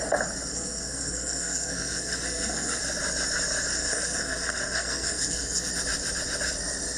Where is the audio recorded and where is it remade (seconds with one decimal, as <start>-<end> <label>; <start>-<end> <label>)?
0.0-0.5 recorded; 0.5-2.8 remade; 2.8-3.8 recorded; 3.8-5.7 remade; 5.7-7.0 recorded